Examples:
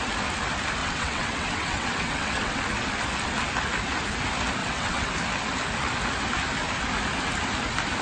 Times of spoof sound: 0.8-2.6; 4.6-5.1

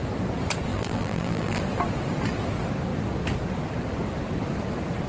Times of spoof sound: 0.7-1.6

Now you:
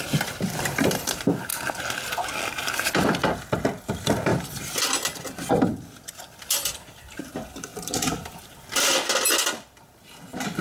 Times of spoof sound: 0.0-1.5; 3.8-10.6

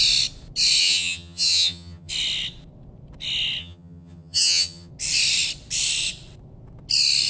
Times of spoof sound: 0.8-2.1; 3.6-4.9

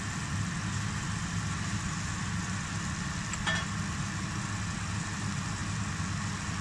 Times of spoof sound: none

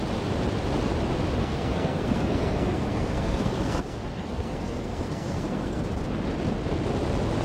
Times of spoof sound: 1.4-5.8